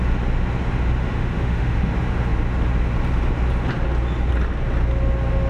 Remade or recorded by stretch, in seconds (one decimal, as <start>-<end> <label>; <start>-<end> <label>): 0.0-1.0 recorded; 1.0-1.9 remade; 1.9-5.5 recorded